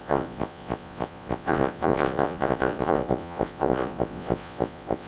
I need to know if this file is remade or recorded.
remade